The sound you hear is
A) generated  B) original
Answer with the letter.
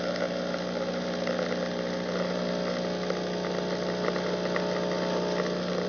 B